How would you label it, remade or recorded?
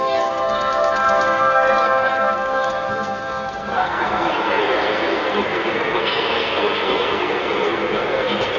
remade